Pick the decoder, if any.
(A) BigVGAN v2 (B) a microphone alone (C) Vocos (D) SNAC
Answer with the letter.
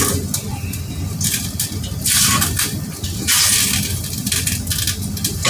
B